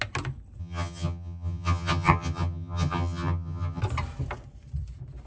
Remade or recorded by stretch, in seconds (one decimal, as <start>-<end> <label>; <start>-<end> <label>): 0.0-0.6 recorded; 0.6-3.8 remade; 3.8-5.3 recorded